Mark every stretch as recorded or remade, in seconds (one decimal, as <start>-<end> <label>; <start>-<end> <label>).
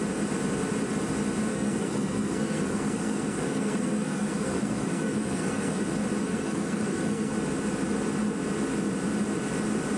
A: 0.0-1.5 recorded; 1.5-5.8 remade; 5.8-6.2 recorded; 6.2-7.3 remade; 7.3-10.0 recorded